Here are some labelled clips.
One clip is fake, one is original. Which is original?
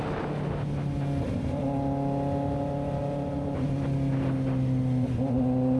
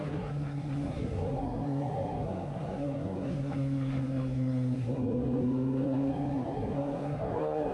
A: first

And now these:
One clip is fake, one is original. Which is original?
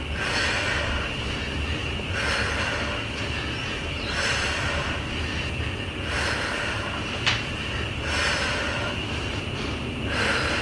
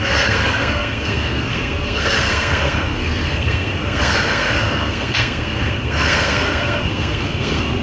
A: first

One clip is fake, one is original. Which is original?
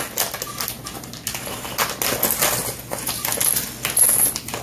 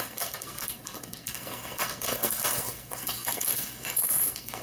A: first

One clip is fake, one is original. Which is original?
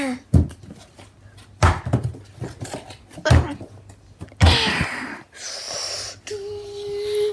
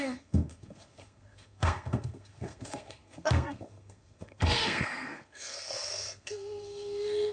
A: first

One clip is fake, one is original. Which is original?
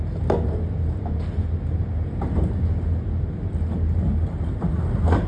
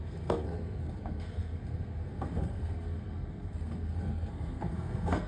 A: first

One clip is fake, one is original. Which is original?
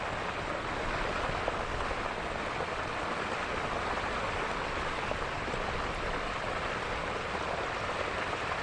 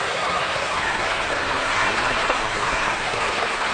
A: first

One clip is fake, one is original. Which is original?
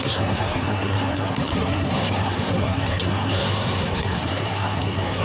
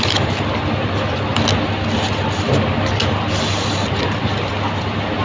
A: second